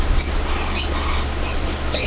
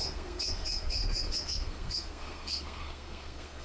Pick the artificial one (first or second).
second